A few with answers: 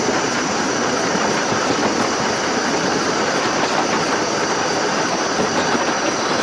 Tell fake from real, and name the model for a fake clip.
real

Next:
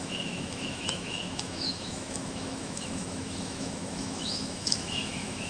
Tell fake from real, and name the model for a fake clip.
fake, autoencoder, DAC-VAE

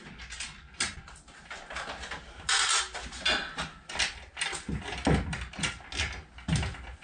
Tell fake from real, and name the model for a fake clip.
real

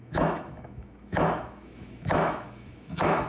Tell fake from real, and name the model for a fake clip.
fake, autoencoder, DAC-VAE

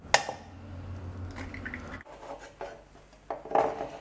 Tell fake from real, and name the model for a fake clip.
real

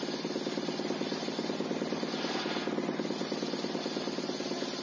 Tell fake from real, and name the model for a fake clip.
real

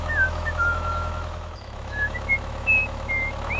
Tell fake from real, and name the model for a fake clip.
fake, autoencoder, DAC-VAE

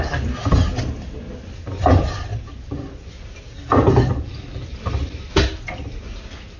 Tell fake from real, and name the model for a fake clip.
real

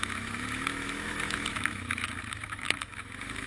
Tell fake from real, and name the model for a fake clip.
fake, autoencoder, DAC-VAE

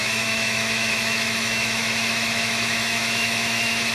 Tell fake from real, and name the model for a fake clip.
fake, autoencoder, DAC-VAE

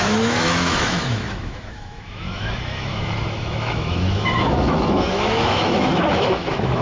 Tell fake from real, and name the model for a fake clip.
fake, autoencoder, DAC-VAE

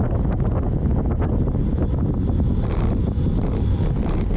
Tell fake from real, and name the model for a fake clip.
real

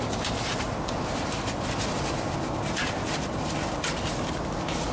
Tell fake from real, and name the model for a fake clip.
real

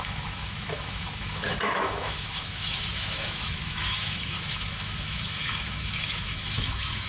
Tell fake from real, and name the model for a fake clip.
fake, autoencoder, DAC-VAE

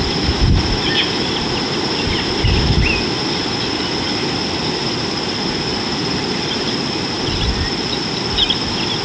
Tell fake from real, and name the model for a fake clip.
real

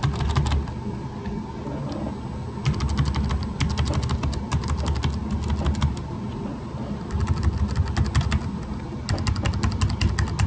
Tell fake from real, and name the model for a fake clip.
real